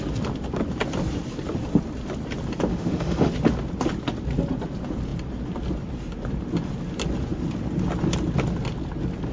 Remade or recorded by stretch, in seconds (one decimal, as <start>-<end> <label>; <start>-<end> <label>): 0.0-2.7 recorded; 2.7-3.3 remade; 3.3-9.3 recorded